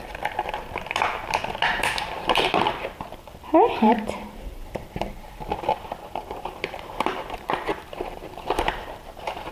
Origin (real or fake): fake